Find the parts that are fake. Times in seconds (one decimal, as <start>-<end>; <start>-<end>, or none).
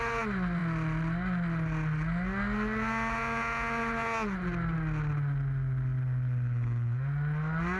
none